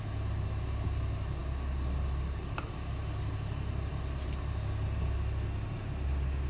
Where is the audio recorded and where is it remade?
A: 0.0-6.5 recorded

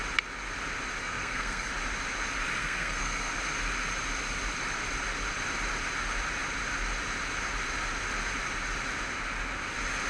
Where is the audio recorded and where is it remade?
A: 0.0-1.0 recorded; 1.0-1.7 remade; 1.7-2.6 recorded; 2.6-3.3 remade; 3.3-10.1 recorded

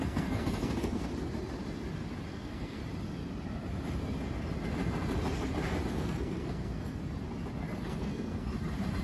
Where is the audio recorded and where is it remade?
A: 0.0-1.1 remade; 1.1-2.3 recorded; 2.3-2.8 remade; 2.8-5.9 recorded; 5.9-7.0 remade; 7.0-7.8 recorded; 7.8-8.5 remade; 8.5-9.0 recorded

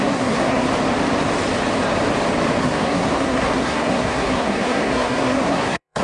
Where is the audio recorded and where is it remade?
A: 0.0-0.7 remade; 0.7-2.6 recorded; 2.6-6.0 remade

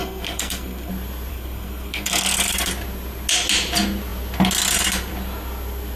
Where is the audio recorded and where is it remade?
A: 0.0-0.9 remade; 0.9-1.3 recorded; 1.3-2.7 remade; 2.7-6.0 recorded

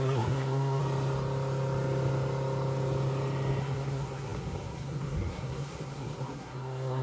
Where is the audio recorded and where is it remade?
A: 0.0-0.8 remade; 0.8-3.6 recorded; 3.6-7.0 remade